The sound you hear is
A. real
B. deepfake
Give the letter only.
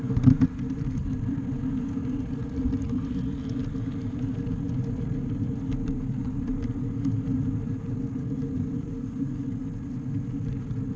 A